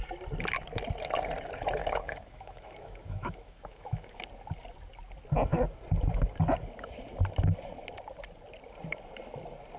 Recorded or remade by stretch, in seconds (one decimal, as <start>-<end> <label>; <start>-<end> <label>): 0.0-1.8 recorded; 1.8-4.2 remade; 4.2-9.8 recorded